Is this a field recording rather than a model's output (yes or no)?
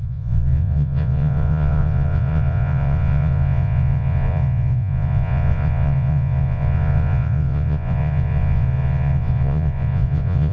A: no